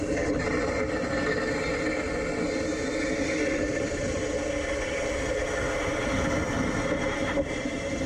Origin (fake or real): real